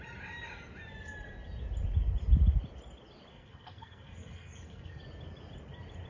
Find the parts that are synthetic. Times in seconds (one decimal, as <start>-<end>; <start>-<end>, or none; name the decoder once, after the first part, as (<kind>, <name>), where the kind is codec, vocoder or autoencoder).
3.3-5.0 (codec, SNAC)